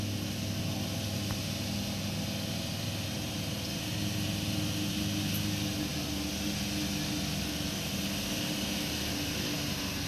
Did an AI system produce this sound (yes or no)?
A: no